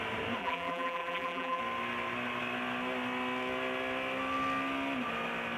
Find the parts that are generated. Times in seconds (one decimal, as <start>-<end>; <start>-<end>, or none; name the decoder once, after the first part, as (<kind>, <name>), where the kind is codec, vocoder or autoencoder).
0.4-1.6 (vocoder, BigVGAN v2)